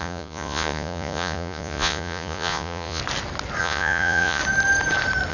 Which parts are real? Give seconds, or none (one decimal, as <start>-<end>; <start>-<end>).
3.0-3.6; 4.4-5.3